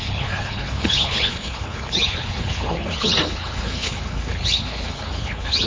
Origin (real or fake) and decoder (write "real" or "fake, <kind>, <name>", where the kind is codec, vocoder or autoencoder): fake, codec, HILCodec